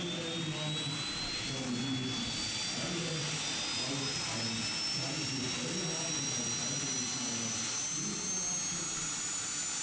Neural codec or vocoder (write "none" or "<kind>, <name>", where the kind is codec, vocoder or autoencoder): none